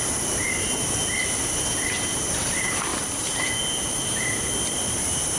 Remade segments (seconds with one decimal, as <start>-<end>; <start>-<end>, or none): none